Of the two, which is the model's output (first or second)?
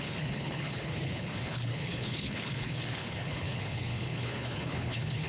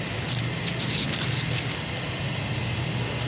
first